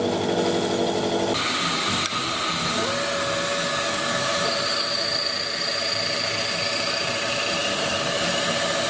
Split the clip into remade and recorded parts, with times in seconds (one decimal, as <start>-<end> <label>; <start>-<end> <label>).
0.0-3.7 recorded; 3.7-4.4 remade; 4.4-7.6 recorded; 7.6-8.3 remade; 8.3-8.9 recorded

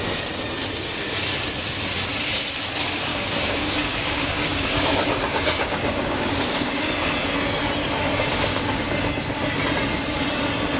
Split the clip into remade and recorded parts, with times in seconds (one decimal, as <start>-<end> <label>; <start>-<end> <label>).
0.0-3.1 recorded; 3.1-6.8 remade; 6.8-8.1 recorded; 8.1-8.8 remade; 8.8-10.8 recorded